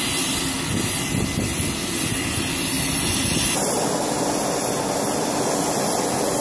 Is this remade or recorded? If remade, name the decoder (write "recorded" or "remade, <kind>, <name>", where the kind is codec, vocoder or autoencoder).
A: recorded